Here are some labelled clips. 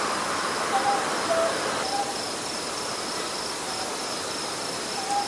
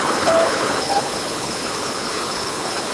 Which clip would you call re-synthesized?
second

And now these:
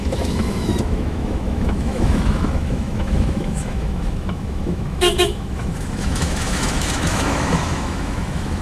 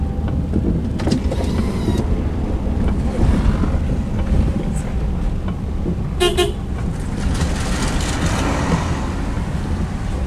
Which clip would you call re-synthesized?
first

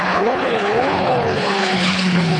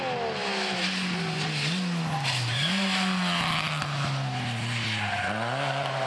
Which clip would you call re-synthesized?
first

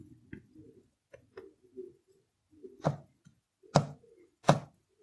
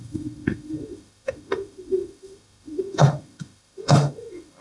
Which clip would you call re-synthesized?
second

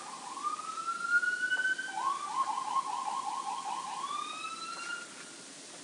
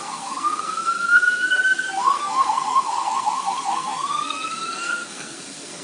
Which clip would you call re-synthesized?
second